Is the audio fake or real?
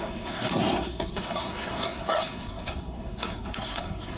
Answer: fake